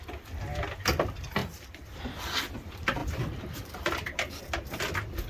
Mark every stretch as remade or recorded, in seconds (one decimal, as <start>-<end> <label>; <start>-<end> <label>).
0.0-1.4 recorded; 1.4-2.0 remade; 2.0-3.0 recorded; 3.0-4.4 remade; 4.4-5.3 recorded